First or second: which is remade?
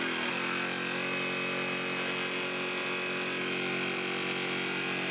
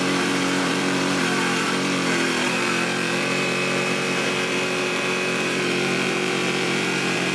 second